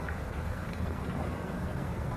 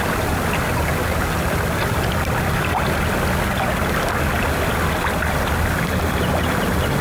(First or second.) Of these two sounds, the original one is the second